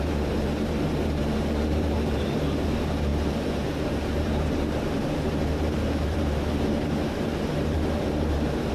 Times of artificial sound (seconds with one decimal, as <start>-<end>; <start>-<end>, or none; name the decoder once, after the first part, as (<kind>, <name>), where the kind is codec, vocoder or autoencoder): 0.0-8.7 (vocoder, BigVGAN v2)